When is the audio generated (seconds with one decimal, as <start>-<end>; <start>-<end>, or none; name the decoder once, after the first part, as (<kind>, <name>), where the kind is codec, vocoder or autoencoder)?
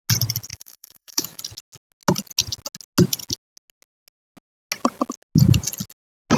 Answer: 0.5-1.4 (autoencoder, DAC-VAE)